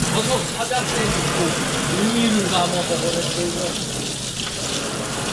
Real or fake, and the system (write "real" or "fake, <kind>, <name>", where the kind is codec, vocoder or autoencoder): real